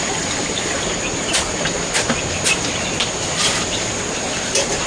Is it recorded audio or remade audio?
recorded